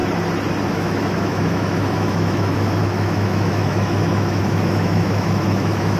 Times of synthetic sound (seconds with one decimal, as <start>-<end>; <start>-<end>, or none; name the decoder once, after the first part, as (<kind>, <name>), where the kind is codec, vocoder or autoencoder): 0.7-6.0 (autoencoder, DAC-VAE)